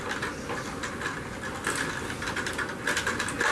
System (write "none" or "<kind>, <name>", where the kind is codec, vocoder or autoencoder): none